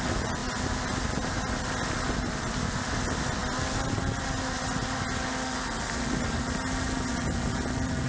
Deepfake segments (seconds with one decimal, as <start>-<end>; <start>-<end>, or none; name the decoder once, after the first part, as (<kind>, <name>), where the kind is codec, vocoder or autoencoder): none